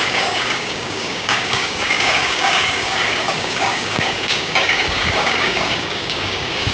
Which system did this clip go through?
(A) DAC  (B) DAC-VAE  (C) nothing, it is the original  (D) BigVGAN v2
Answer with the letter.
A